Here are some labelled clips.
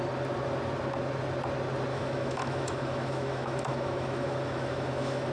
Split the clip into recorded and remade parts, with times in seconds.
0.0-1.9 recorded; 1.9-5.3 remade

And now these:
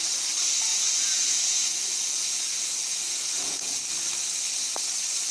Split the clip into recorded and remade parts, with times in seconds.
0.0-0.7 recorded; 0.7-3.9 remade; 3.9-5.3 recorded

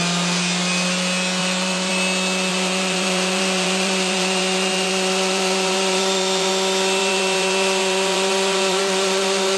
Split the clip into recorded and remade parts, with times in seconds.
0.0-1.4 recorded; 1.4-1.9 remade; 1.9-2.5 recorded; 2.5-6.5 remade; 6.5-7.0 recorded; 7.0-9.6 remade

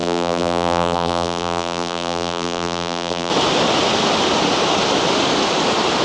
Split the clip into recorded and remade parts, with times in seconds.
0.0-3.3 remade; 3.3-6.0 recorded

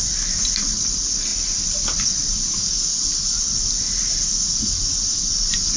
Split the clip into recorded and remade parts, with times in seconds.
0.0-5.8 recorded

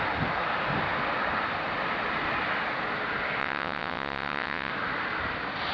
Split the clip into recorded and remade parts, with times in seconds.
0.0-3.4 recorded; 3.4-4.7 remade; 4.7-5.7 recorded

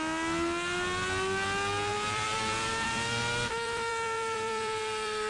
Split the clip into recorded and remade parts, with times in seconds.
0.0-1.9 recorded; 1.9-5.3 remade